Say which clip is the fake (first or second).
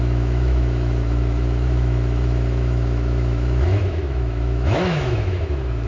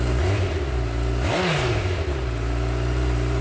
first